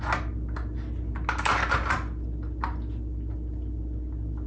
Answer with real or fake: real